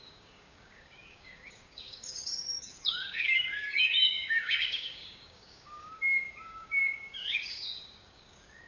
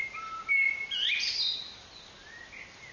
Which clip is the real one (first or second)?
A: second